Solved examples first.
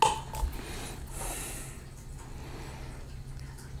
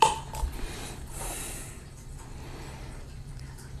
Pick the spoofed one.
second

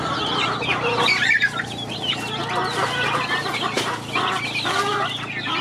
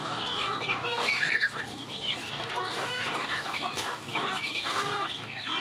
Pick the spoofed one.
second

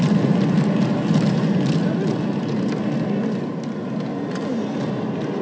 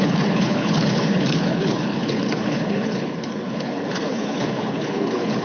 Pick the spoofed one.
second